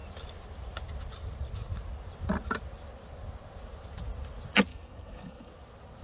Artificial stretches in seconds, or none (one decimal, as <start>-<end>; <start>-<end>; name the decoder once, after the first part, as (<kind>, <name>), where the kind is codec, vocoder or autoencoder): 4.7-5.5 (codec, DAC)